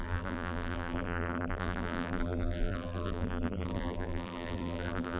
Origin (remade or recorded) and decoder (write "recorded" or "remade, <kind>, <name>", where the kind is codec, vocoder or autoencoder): remade, vocoder, BigVGAN v2